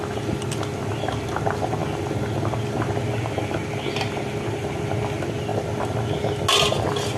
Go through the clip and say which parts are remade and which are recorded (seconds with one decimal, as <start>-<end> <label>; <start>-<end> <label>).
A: 0.0-7.2 recorded